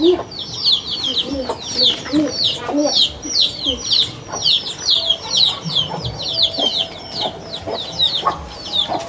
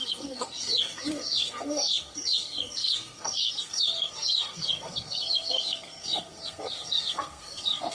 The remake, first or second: second